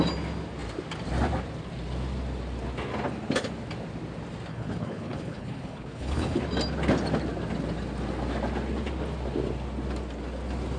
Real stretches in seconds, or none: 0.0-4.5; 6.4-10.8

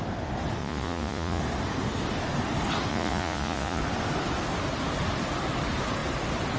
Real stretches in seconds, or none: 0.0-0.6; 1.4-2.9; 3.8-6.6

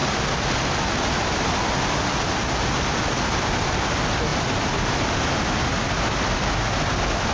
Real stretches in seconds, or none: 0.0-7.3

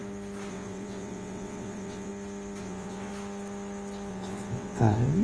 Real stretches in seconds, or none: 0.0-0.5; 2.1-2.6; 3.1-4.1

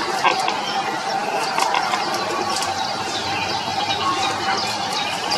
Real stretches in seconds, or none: 0.0-5.4

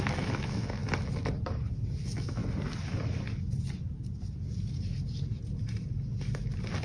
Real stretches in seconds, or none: 0.8-2.0; 2.4-6.8

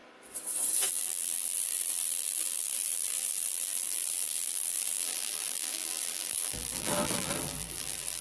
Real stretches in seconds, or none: 0.0-0.9